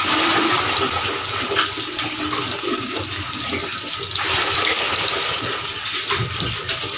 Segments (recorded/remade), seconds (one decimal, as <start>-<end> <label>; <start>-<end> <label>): 0.0-7.0 recorded